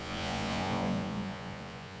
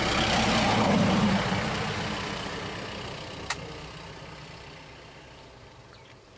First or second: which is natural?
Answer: second